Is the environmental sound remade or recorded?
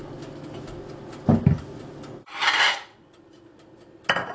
recorded